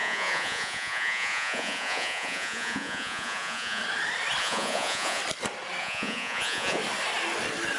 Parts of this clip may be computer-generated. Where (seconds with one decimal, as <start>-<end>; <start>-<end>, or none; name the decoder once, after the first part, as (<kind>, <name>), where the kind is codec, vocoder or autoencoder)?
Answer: 0.0-3.8 (vocoder, Vocos); 4.4-5.2; 5.8-6.8